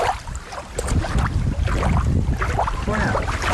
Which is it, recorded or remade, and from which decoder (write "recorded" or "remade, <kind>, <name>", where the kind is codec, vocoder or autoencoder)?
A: recorded